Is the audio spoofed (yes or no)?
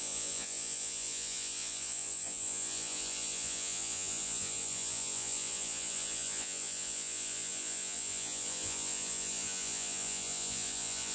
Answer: yes